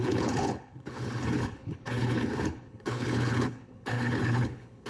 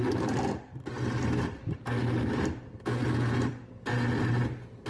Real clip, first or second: second